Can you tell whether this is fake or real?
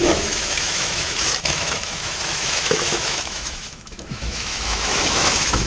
fake